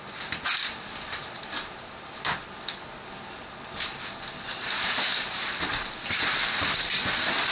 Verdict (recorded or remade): recorded